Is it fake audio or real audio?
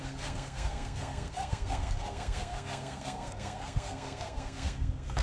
fake